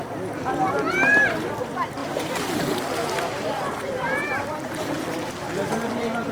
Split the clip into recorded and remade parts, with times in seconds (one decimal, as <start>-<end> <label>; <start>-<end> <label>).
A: 0.0-2.0 recorded; 2.0-5.3 remade; 5.3-6.3 recorded